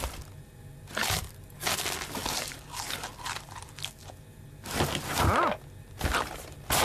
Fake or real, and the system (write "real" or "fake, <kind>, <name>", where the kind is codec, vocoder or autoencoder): real